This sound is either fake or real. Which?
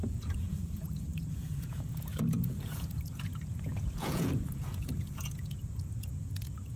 fake